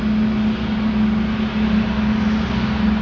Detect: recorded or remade recorded